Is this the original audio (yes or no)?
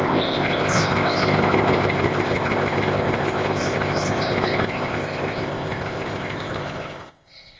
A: no